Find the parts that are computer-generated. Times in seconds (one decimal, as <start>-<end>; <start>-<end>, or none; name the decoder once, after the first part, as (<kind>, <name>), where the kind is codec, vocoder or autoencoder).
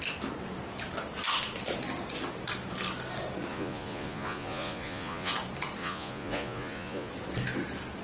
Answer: 3.5-5.3 (vocoder, Vocos); 5.8-7.1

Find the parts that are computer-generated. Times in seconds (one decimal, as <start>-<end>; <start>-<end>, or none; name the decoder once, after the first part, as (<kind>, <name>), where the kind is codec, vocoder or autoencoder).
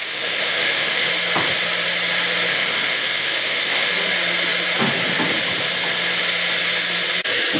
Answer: 0.0-1.1 (autoencoder, DAC-VAE); 2.5-3.9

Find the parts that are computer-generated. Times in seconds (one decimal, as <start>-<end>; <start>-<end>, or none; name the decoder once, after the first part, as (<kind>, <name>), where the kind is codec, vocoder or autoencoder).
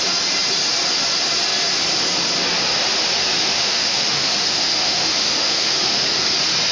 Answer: 3.4-6.3 (autoencoder, DAC-VAE)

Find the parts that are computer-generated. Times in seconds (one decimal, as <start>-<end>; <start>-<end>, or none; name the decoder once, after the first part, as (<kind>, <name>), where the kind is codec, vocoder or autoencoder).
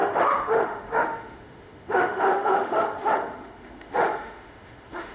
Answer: 0.0-5.1 (autoencoder, DAC-VAE)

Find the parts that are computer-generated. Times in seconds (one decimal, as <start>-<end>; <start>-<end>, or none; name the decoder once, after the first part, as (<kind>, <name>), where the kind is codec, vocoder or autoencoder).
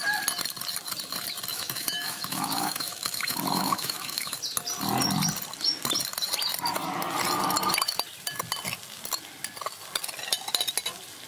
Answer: 1.5-4.4 (autoencoder, DAC-VAE)